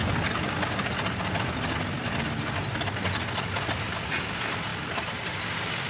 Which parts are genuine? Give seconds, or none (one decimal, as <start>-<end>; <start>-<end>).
0.0-5.9